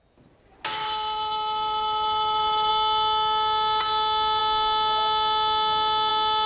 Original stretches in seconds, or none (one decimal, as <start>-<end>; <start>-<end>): 0.0-0.8; 2.7-6.5